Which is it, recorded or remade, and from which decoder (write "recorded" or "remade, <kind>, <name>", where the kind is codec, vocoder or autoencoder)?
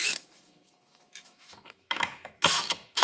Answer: remade, autoencoder, DAC-VAE